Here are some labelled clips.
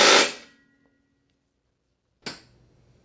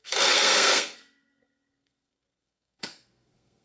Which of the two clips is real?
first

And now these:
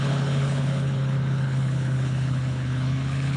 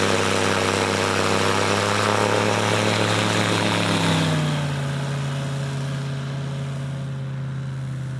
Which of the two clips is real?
second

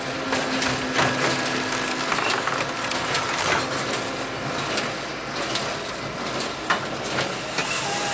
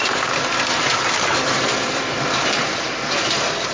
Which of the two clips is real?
first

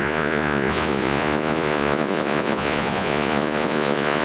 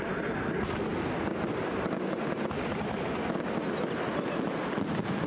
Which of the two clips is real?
second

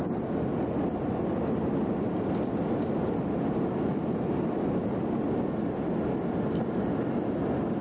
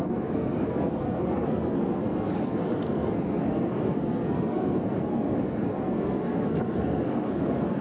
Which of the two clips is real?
first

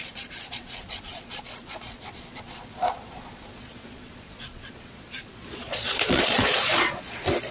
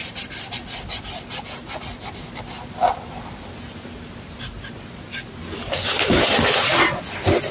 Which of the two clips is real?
second